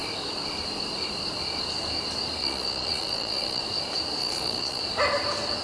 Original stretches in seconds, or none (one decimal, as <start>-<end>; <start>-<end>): 0.0-2.4; 3.6-4.2; 4.8-5.6